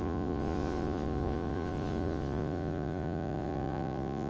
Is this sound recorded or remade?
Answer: remade